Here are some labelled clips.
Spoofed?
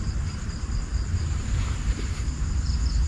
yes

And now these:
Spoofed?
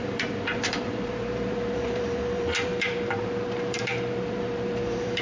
yes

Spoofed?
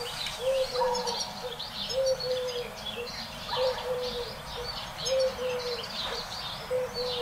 yes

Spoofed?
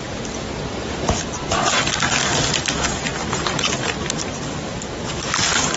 no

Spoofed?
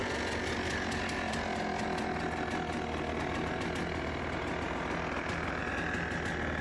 no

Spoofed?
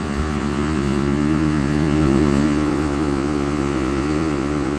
yes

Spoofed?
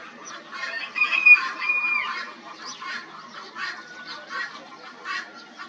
no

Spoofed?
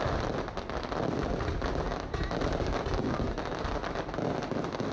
no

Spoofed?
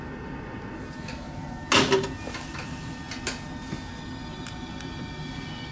no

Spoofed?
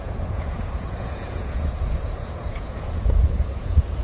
yes